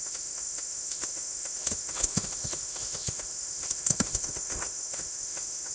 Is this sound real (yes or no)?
no